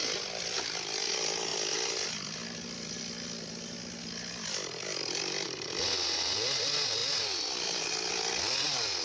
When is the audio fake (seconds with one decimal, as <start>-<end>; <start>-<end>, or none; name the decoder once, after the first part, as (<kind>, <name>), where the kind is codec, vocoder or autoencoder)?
none